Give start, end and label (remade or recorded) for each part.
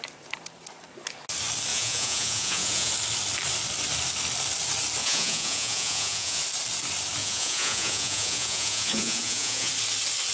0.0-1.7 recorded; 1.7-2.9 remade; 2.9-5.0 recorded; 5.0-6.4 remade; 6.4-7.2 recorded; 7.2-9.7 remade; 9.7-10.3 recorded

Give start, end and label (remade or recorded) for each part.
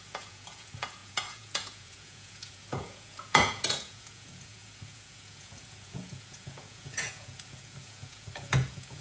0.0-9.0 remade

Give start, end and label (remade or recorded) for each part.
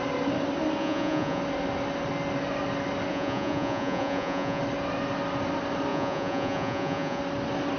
0.0-0.8 recorded; 0.8-1.4 remade; 1.4-3.1 recorded; 3.1-4.6 remade; 4.6-5.9 recorded; 5.9-7.2 remade; 7.2-7.8 recorded